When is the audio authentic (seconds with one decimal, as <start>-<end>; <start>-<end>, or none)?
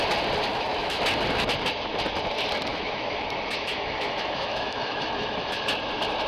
0.0-0.5; 1.0-2.7; 5.6-6.3